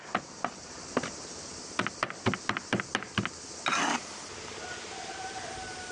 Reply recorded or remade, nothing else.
recorded